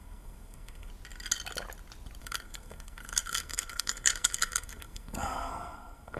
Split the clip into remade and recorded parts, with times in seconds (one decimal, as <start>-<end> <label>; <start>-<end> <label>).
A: 0.0-0.9 remade; 0.9-2.2 recorded; 2.2-6.2 remade